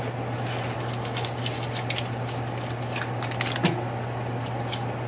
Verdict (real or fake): real